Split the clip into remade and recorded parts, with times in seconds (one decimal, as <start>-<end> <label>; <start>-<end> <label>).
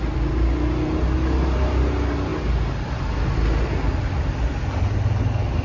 0.0-5.6 recorded